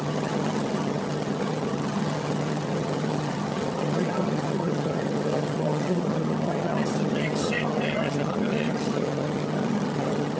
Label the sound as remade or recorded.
remade